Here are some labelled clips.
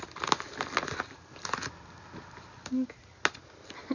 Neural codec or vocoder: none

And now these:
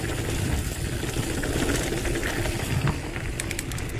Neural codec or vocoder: none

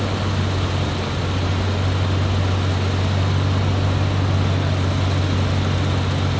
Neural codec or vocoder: none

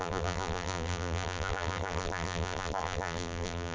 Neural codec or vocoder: vocoder, BigVGAN v2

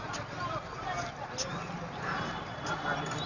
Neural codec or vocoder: none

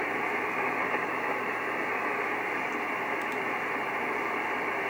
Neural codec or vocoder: none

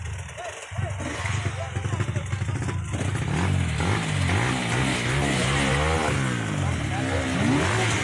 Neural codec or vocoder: none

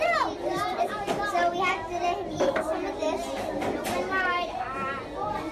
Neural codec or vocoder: none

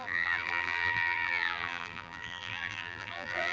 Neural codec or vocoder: vocoder, BigVGAN v2